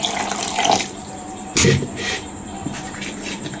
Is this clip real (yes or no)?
yes